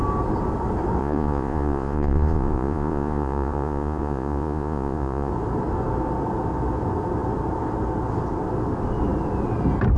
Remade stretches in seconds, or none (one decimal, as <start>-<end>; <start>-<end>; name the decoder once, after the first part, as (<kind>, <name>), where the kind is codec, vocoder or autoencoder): 1.0-5.3 (vocoder, Vocos)